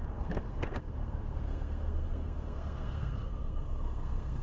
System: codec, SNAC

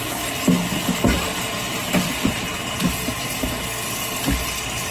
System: none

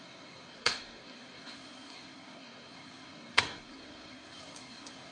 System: codec, SNAC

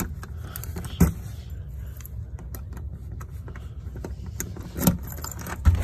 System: none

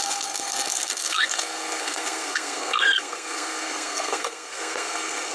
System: codec, SNAC